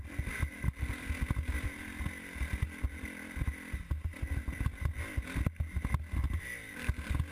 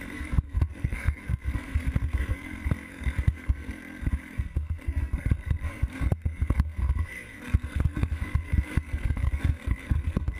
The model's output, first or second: second